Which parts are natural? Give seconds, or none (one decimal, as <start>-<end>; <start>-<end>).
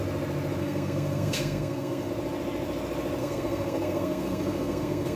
0.0-0.6; 2.1-3.2